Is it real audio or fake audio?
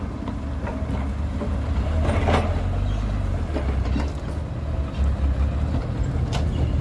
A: real